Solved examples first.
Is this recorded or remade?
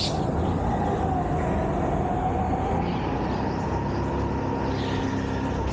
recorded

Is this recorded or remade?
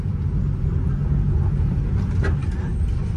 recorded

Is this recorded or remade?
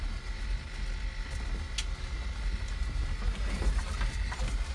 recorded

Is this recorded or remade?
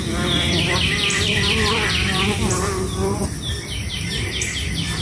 remade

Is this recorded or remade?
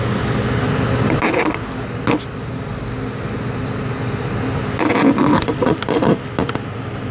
recorded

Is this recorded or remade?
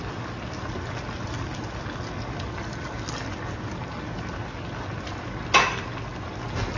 recorded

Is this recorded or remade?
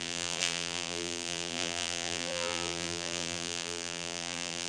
remade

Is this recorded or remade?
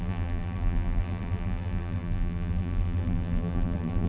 remade